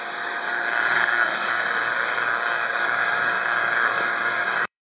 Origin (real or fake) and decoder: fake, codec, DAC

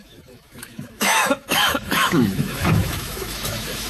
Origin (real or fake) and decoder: fake, autoencoder, DAC-VAE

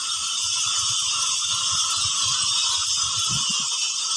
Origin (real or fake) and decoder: real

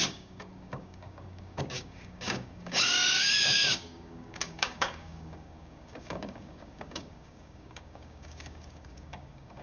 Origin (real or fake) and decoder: fake, codec, DAC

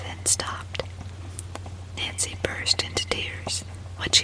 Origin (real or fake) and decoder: real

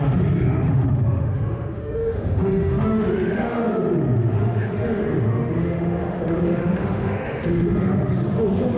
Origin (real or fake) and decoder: fake, autoencoder, DAC-VAE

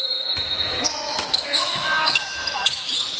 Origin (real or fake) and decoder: fake, autoencoder, DAC-VAE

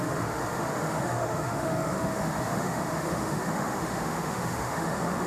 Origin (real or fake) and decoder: fake, autoencoder, DAC-VAE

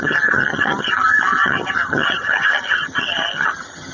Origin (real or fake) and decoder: fake, vocoder, HiFi-GAN